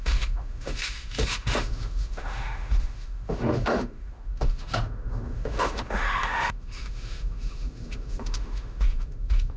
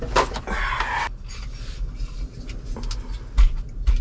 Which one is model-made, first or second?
first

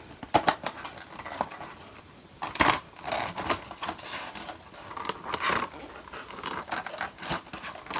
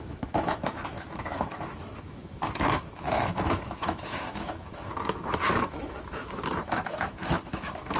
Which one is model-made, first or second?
second